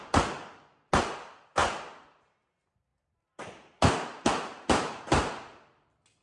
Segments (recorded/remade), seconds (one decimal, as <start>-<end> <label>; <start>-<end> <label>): 0.0-6.2 recorded